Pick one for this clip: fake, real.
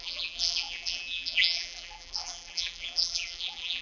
fake